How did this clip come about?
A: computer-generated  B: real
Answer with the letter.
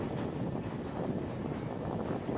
B